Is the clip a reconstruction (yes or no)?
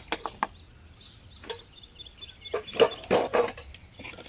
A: no